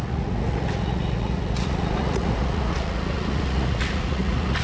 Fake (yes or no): yes